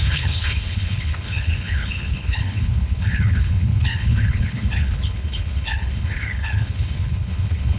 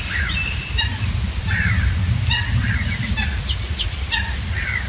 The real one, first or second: second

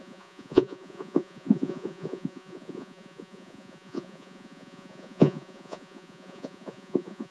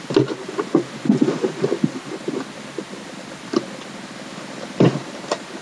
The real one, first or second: second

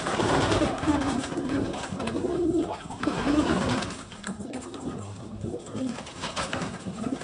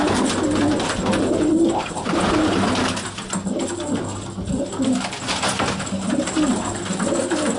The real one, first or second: second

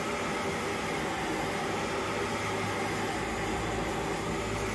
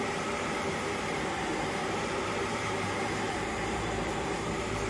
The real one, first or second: first